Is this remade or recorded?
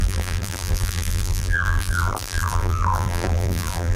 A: remade